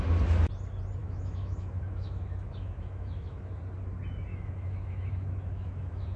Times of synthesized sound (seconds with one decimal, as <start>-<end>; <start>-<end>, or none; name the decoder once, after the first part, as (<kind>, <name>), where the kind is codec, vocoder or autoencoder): 1.0-3.6 (autoencoder, DAC-VAE); 4.3-6.2